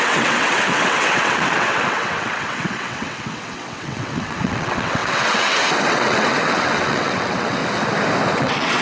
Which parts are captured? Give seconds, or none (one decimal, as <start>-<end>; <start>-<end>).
7.6-8.3